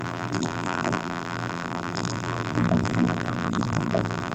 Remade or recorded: remade